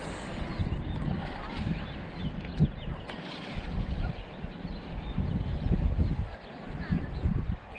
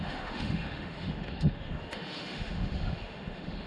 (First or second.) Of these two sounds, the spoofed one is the second